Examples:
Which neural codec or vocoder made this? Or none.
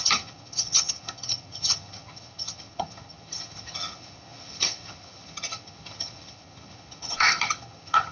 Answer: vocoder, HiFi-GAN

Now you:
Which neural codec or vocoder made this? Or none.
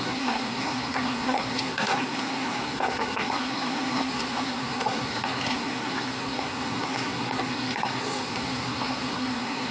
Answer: codec, SNAC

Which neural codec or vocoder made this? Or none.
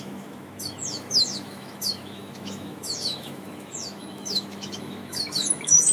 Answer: autoencoder, DAC-VAE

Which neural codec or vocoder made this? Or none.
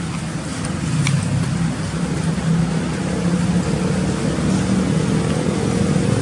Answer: none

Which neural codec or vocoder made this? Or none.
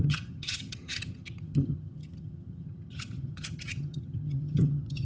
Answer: vocoder, HiFi-GAN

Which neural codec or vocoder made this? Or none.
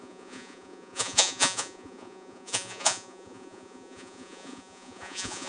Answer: vocoder, Vocos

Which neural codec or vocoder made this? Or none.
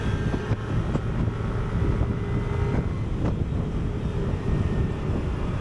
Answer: none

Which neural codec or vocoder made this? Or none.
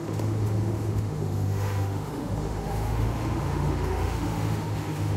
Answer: autoencoder, DAC-VAE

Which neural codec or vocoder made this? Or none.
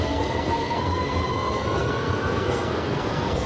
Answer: codec, SNAC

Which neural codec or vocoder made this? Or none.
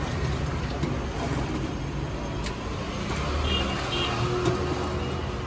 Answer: none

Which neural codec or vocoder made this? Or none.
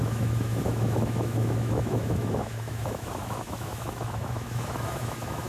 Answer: autoencoder, DAC-VAE